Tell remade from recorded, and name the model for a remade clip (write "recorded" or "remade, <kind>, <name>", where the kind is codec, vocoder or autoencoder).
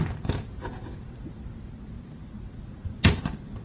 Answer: recorded